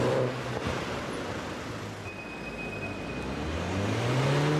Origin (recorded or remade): recorded